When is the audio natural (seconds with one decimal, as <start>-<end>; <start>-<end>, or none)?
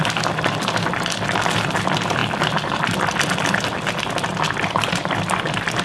none